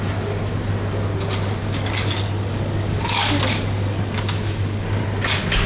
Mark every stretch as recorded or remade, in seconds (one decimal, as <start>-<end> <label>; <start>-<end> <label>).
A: 0.0-1.6 recorded; 1.6-5.0 remade; 5.0-5.7 recorded